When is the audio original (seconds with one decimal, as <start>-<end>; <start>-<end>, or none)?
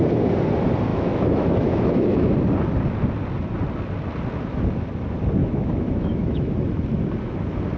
0.0-0.9; 2.3-5.4; 6.5-7.8